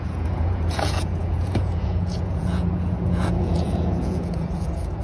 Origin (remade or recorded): remade